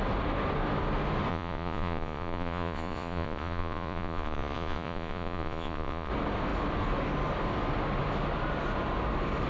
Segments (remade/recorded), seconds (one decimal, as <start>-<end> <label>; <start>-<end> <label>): 0.0-1.3 recorded; 1.3-6.1 remade; 6.1-9.5 recorded